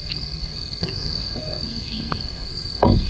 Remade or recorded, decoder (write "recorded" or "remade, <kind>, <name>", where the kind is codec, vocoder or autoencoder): remade, codec, SNAC